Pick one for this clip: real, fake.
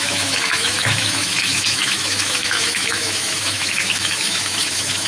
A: fake